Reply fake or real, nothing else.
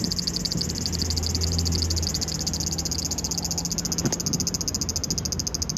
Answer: real